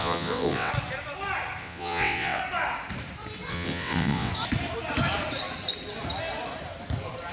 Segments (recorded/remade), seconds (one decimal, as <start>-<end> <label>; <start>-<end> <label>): 0.0-0.7 remade; 0.7-1.6 recorded; 1.6-2.4 remade; 2.4-3.5 recorded; 3.5-4.3 remade; 4.3-7.3 recorded